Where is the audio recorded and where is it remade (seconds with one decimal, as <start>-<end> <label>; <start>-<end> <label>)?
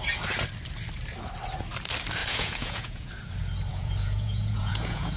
0.0-2.2 recorded; 2.2-3.1 remade; 3.1-3.7 recorded; 3.7-5.2 remade